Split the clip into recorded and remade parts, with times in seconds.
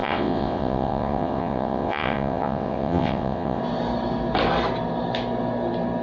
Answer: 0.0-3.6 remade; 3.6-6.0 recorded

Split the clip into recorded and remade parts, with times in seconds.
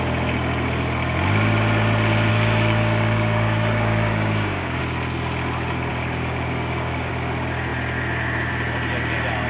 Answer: 0.0-2.3 recorded; 2.3-4.8 remade; 4.8-5.9 recorded; 5.9-7.1 remade; 7.1-9.5 recorded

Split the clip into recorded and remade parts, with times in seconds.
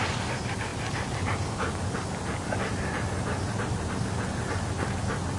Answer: 0.0-5.4 recorded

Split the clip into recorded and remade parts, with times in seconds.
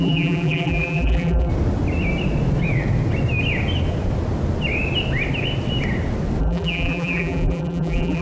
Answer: 0.0-1.5 remade; 1.5-6.4 recorded; 6.4-8.2 remade